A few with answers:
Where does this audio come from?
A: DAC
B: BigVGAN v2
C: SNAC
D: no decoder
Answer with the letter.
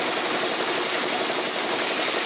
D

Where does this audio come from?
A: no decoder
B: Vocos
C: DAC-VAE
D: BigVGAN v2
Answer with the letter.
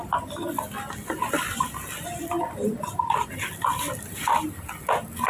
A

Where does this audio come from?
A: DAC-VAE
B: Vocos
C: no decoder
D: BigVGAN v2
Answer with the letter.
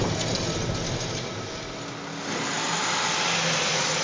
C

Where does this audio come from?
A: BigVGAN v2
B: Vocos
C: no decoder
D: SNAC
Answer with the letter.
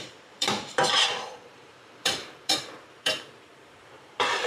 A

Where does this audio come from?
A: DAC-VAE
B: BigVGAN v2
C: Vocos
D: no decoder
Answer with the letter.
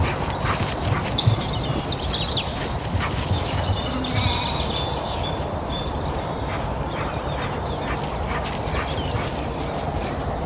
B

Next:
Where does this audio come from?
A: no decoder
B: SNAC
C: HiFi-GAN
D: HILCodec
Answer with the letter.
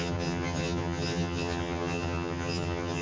C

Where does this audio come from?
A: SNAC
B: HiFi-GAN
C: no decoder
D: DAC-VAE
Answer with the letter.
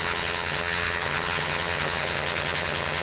B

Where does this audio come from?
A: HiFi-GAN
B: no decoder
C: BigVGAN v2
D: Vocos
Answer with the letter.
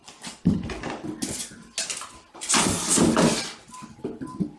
B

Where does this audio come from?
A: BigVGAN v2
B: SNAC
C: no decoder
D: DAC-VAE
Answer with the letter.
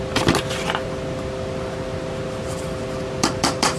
C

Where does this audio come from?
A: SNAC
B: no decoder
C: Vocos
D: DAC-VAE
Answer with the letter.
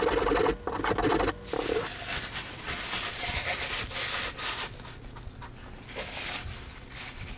B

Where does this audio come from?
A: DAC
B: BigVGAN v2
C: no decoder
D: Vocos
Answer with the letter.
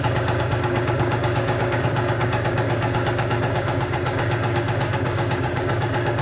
A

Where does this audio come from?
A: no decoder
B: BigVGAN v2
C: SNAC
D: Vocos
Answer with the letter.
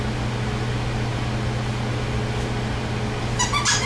A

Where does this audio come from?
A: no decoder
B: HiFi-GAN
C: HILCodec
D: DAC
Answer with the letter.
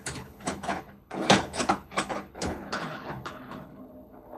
C